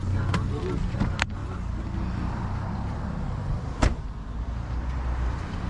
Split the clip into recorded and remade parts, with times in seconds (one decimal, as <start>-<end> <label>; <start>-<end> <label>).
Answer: 0.0-5.7 recorded